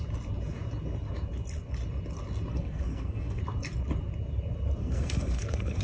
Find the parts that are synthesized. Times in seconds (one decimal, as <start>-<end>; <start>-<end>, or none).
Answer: 2.5-3.4; 4.8-5.8